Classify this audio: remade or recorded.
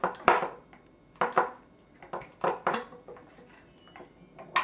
recorded